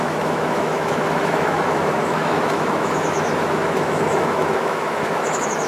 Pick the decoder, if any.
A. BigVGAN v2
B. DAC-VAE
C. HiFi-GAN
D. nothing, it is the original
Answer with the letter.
B